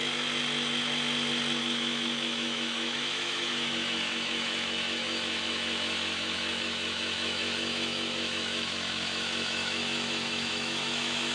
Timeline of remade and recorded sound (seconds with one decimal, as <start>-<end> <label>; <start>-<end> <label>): 0.0-1.6 recorded; 1.6-11.3 remade